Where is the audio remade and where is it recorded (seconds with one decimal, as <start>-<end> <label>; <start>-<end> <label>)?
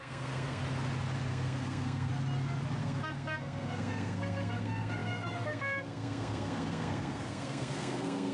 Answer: 0.0-0.6 remade; 0.6-1.3 recorded; 1.3-2.1 remade; 2.1-2.8 recorded; 2.8-8.3 remade